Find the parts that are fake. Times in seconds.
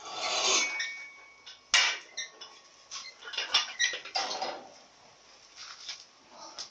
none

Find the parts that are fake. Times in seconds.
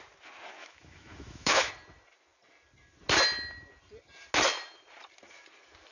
0.6-1.7 (autoencoder, DAC-VAE)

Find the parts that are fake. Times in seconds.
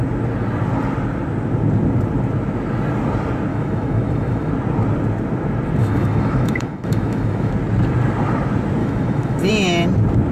3.5-4.5 (autoencoder, DAC-VAE); 5.8-7.5; 8.8-9.5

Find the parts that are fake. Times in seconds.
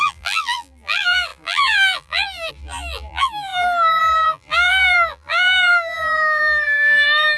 0.0-7.4 (vocoder, BigVGAN v2)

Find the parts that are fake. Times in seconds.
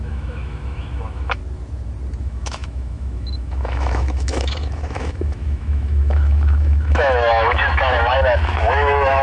0.0-1.4 (autoencoder, DAC-VAE); 2.2-9.2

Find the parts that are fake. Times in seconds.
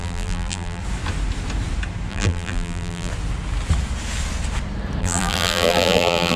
0.0-0.8 (vocoder, BigVGAN v2); 2.1-3.1; 5.0-6.4